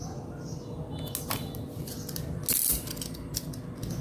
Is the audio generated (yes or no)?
no